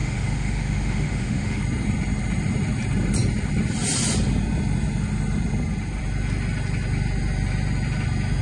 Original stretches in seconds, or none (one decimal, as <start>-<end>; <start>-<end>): 1.6-8.4